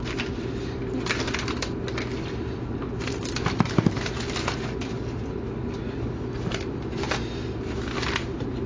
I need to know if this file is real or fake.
real